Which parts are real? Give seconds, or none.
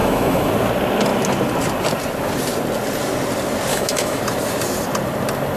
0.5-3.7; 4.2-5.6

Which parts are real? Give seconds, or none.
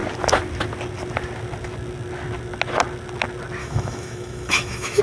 0.0-3.6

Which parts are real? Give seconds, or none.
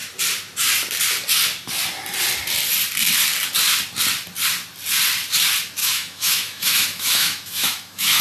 0.0-5.8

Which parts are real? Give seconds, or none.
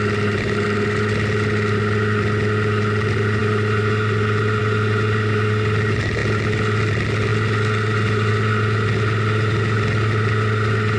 0.0-11.0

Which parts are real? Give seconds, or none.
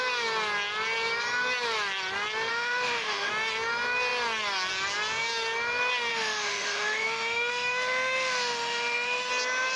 0.0-2.5; 3.3-6.1; 9.3-9.8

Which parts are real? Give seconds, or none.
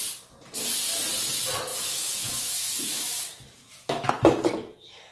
0.0-1.7; 4.1-5.1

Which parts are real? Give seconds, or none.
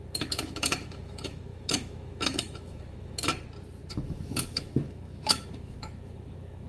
3.3-3.9